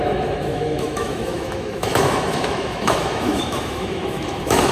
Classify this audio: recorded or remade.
remade